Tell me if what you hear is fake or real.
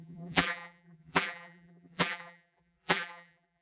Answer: fake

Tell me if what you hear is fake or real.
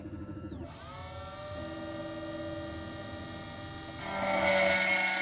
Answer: real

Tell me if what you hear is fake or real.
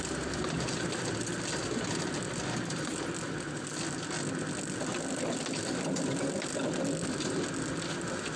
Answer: fake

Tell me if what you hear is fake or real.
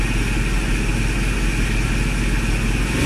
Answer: real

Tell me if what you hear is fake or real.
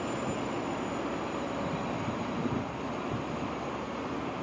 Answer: real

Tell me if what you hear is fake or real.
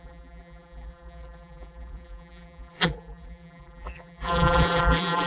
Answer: fake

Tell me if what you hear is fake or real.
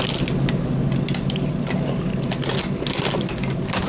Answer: real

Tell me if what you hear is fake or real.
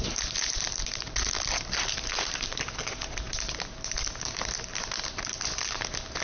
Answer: fake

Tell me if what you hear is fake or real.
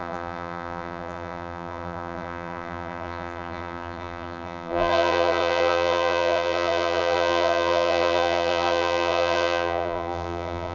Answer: fake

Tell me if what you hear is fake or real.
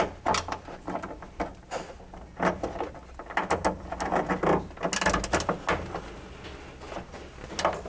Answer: real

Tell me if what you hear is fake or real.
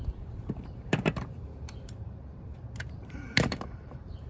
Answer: fake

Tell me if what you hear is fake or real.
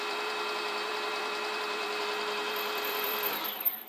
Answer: fake